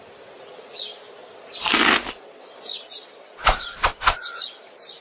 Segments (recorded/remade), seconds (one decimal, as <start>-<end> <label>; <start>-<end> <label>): 0.0-5.0 recorded